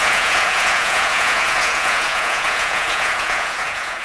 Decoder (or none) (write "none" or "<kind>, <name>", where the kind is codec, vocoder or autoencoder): vocoder, Vocos